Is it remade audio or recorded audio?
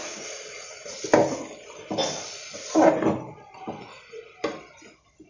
recorded